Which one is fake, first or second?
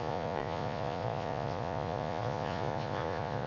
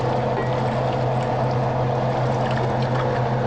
first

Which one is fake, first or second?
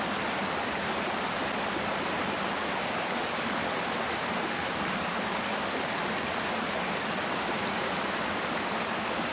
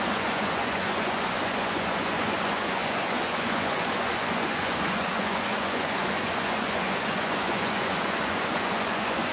second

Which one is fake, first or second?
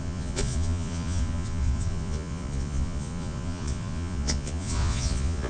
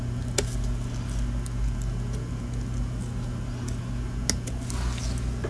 first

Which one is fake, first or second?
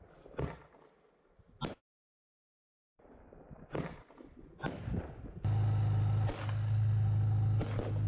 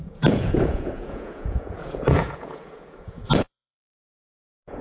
second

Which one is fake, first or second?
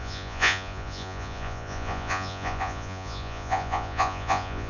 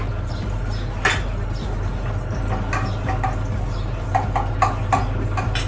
first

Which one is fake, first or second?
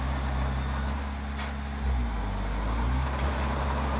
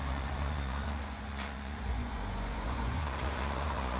second